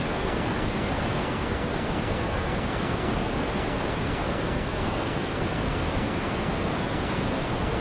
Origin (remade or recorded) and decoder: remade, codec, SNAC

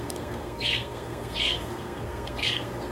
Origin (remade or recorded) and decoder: remade, codec, SNAC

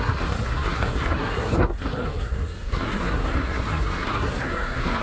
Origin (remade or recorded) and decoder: remade, codec, SNAC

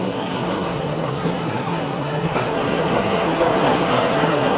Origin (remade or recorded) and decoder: remade, codec, SNAC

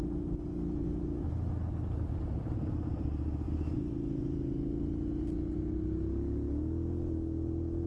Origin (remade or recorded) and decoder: recorded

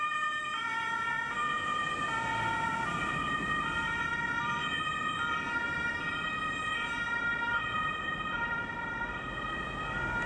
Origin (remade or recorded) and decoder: recorded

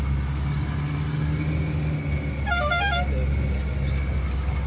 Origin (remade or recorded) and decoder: recorded